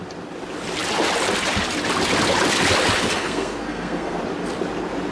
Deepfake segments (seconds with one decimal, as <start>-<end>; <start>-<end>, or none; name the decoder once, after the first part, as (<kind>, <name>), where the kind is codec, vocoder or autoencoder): 3.1-4.2 (codec, SNAC)

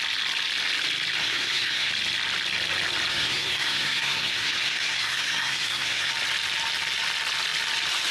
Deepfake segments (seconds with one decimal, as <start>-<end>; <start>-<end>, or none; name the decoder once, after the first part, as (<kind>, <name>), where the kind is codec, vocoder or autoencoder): 1.2-1.9 (codec, SNAC); 3.1-6.1

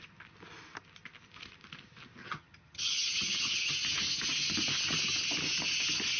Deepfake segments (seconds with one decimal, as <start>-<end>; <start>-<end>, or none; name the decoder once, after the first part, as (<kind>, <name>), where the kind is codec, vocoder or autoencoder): 2.2-3.7 (vocoder, HiFi-GAN)